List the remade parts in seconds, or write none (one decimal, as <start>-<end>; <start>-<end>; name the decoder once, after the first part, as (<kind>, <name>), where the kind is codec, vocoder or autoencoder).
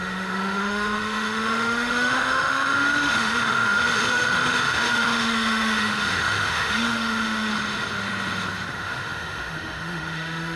0.0-7.5 (autoencoder, DAC-VAE); 8.7-10.6